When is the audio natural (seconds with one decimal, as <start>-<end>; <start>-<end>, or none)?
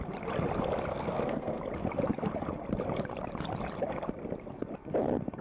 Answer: 0.0-0.9; 1.6-5.4